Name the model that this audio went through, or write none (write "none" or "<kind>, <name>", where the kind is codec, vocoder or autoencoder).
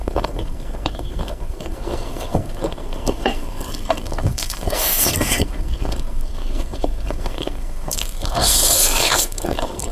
codec, SNAC